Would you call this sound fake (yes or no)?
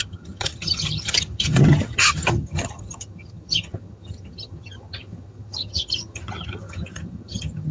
yes